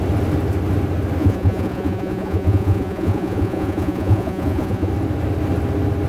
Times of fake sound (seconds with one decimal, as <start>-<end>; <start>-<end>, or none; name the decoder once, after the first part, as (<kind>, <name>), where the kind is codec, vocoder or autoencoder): 1.2-4.9 (vocoder, Vocos)

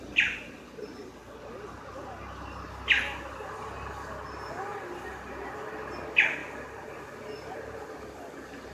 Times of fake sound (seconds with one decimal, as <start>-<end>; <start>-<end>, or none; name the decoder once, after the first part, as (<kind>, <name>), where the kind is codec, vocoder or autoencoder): 4.7-5.4 (vocoder, BigVGAN v2); 6.4-7.2

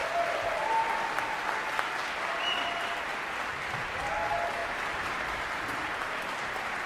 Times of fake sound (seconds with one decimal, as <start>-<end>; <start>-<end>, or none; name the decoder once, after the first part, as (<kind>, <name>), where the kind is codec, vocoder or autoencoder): 4.6-5.4 (vocoder, BigVGAN v2)